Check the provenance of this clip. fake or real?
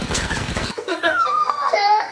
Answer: fake